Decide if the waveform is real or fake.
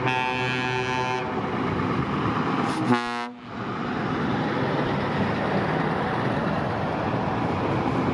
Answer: real